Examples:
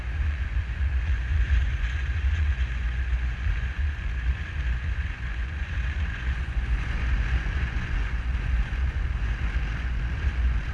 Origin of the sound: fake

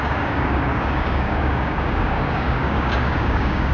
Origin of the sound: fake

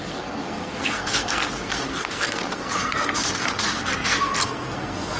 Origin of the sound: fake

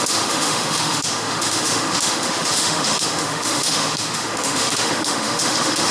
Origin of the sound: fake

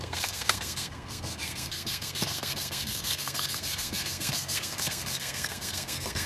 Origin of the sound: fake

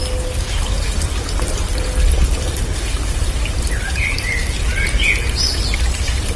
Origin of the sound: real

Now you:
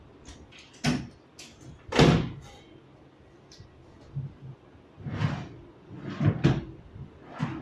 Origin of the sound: real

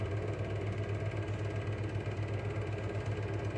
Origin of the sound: real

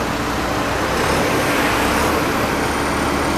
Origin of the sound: real